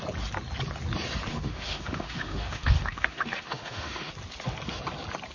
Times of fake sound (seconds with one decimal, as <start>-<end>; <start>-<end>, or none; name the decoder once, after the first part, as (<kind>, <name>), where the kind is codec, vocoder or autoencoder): 1.3-4.1 (autoencoder, DAC-VAE)

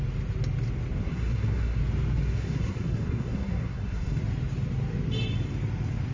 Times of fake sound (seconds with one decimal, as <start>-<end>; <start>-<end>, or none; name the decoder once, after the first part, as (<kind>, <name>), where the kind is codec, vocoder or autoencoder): 1.0-1.8 (codec, SNAC); 2.2-4.2

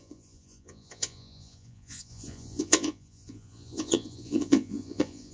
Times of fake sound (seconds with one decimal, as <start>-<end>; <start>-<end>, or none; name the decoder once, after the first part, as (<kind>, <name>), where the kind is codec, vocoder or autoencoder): 0.0-5.3 (vocoder, Vocos)

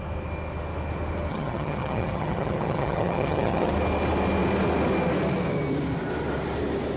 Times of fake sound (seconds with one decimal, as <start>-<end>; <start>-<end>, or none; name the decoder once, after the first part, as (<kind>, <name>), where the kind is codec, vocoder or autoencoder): 1.3-3.7 (vocoder, HiFi-GAN)

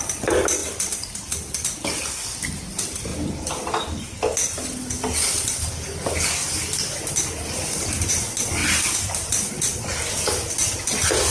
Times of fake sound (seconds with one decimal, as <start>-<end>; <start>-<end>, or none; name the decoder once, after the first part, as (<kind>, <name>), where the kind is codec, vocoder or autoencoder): none

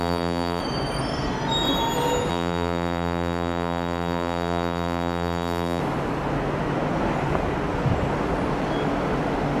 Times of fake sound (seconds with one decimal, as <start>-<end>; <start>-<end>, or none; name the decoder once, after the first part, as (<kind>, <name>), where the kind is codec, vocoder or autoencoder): 0.0-0.6 (vocoder, BigVGAN v2); 2.3-5.8

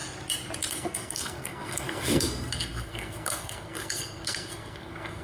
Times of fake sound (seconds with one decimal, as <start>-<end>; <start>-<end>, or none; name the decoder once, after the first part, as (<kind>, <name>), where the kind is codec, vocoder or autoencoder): 0.7-5.2 (codec, SNAC)

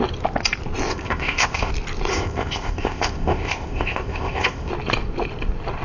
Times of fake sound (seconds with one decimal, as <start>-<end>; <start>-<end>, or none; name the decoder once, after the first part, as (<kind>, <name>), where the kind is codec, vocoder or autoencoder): 0.9-1.7 (codec, ZipCodec); 2.1-4.7